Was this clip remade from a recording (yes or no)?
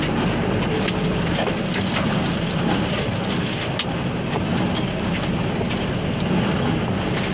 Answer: no